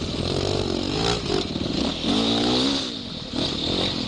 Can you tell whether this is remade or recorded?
recorded